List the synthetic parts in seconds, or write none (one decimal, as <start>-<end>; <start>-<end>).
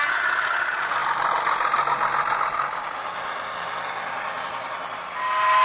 none